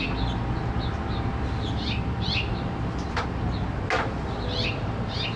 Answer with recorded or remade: recorded